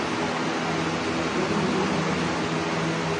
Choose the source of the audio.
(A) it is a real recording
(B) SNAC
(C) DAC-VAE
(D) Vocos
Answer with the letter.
A